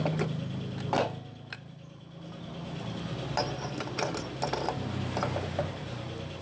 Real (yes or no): yes